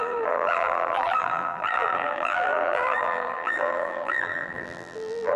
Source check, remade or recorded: remade